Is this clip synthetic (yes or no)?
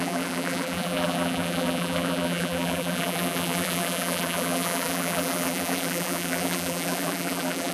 yes